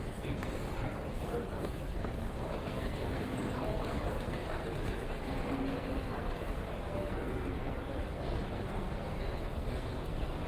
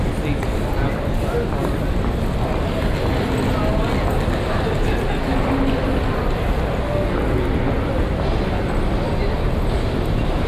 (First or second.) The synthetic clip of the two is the first